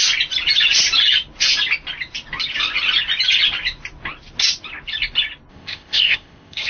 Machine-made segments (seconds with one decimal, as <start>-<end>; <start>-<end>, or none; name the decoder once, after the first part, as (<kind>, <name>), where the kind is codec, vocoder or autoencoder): 5.5-6.7 (codec, ZipCodec)